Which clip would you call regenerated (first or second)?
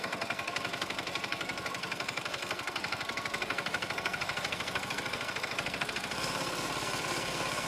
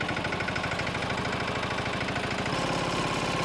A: first